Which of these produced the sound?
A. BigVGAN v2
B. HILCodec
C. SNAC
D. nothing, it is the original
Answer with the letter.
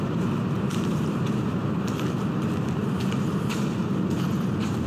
A